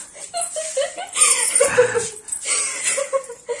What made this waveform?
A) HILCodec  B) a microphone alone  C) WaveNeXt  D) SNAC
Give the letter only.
B